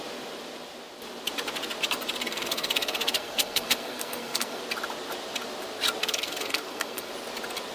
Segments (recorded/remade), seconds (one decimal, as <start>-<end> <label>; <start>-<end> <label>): 0.0-2.3 recorded; 2.3-4.6 remade; 4.6-6.0 recorded; 6.0-7.1 remade; 7.1-7.7 recorded